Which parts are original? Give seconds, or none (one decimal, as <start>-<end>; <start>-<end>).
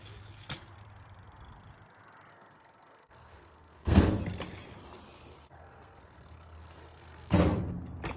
0.0-2.3; 4.2-5.3; 7.6-8.2